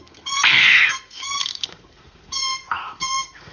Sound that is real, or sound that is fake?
fake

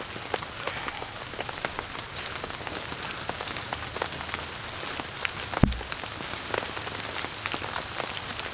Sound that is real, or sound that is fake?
real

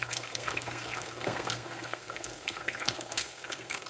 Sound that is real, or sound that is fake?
fake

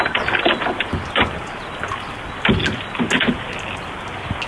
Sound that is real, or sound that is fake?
real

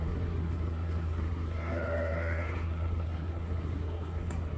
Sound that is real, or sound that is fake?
fake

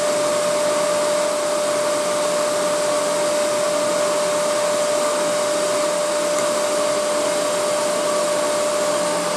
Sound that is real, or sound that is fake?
real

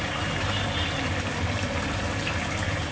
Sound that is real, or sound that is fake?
real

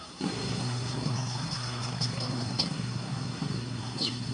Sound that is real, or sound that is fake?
fake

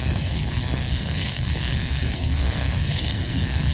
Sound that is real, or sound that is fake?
fake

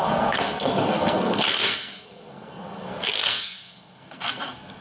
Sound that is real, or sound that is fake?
fake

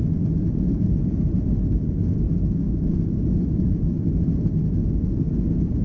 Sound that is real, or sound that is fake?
real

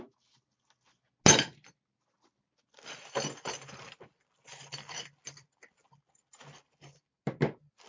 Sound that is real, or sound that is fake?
real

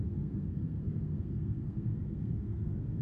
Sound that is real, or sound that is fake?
fake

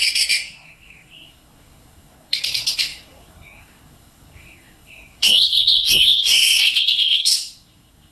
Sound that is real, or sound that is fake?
fake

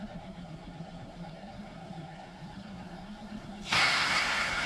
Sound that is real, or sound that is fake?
fake